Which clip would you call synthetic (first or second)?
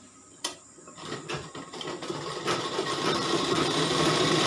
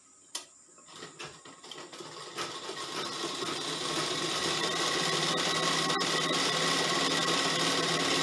first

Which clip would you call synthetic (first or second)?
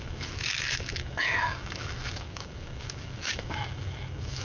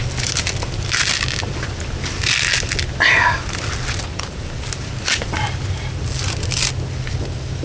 first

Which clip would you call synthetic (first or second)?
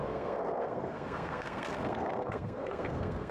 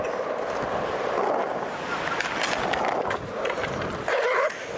first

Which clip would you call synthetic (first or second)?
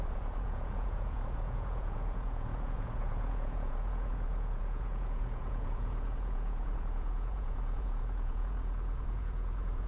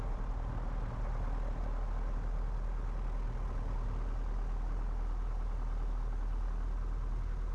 first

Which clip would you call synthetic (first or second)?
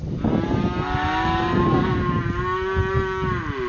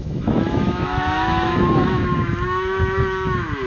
second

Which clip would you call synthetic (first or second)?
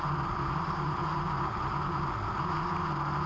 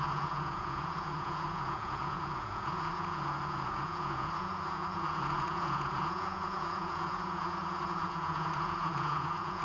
second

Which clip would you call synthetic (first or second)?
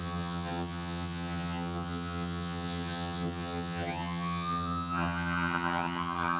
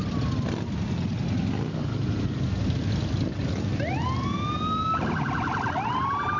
first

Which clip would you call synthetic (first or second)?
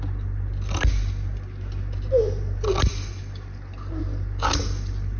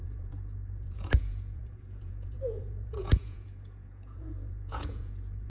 second